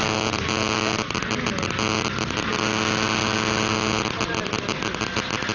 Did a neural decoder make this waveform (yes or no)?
no